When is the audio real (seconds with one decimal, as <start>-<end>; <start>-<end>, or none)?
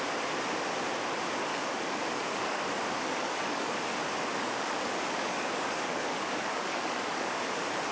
0.0-1.5; 3.7-4.3; 7.4-7.9